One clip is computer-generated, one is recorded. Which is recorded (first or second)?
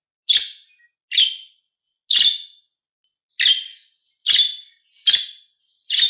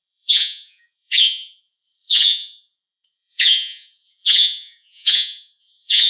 first